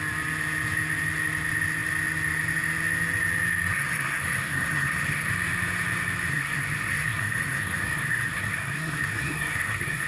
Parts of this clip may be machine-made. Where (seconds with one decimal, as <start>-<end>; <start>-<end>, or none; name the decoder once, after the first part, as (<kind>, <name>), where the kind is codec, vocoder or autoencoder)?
3.7-5.3 (codec, SNAC); 6.3-10.1